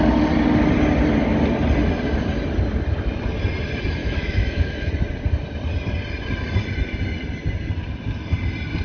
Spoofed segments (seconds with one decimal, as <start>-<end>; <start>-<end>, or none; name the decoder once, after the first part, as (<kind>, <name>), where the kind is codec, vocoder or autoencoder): 4.0-4.9 (autoencoder, DAC-VAE)